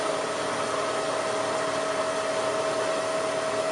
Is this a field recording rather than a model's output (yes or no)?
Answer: yes